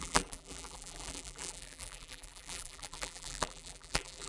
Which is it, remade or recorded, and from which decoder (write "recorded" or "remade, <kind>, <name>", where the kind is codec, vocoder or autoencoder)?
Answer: remade, vocoder, BigVGAN v2